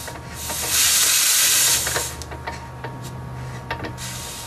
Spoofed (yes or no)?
no